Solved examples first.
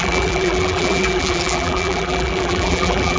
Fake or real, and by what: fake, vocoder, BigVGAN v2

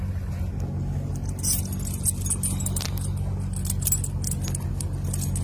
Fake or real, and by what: real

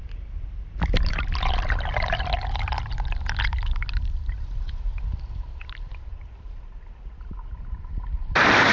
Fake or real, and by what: real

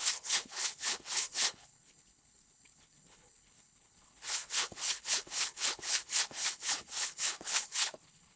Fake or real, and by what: fake, codec, HILCodec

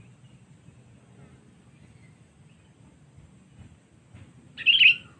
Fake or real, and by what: real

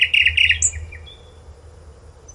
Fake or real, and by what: real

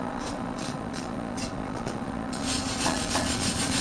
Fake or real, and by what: fake, vocoder, Vocos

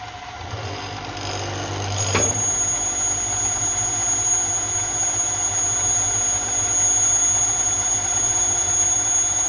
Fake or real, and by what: real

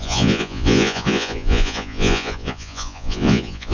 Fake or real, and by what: fake, vocoder, Vocos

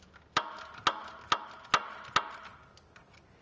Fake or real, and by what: real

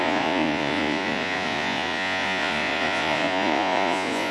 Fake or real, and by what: fake, vocoder, Vocos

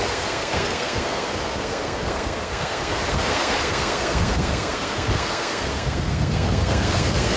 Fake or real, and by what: fake, codec, SNAC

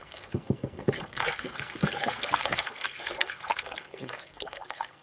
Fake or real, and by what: fake, codec, SNAC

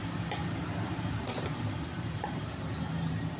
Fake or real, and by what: fake, vocoder, BigVGAN v2